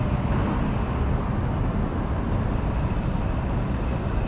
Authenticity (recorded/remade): recorded